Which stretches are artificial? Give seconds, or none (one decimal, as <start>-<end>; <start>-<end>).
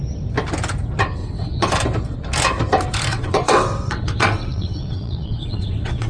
1.2-1.7; 3.1-6.1